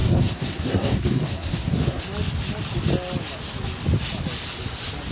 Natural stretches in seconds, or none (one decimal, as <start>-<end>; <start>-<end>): 2.0-5.1